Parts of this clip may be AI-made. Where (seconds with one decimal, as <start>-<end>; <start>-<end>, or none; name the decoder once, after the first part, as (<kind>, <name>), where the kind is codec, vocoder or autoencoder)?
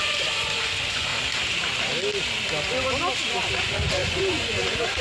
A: 0.0-1.1 (vocoder, Vocos); 3.6-5.0